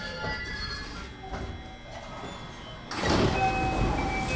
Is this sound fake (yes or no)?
no